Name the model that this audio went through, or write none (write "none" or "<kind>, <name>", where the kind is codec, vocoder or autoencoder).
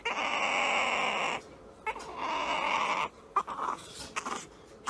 none